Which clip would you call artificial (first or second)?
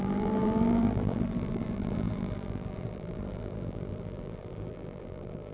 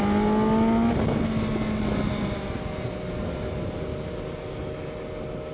first